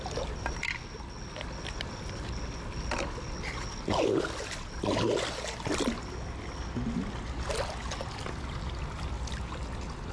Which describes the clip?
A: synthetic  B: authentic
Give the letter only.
B